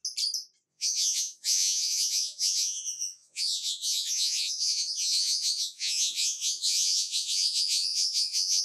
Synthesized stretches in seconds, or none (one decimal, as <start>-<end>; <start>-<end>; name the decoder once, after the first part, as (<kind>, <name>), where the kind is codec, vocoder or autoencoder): 0.7-8.6 (vocoder, Vocos)